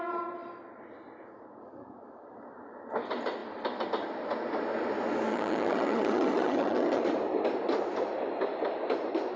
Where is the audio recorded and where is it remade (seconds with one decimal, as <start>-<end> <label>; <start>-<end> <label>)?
0.0-5.3 recorded; 5.3-7.0 remade; 7.0-9.4 recorded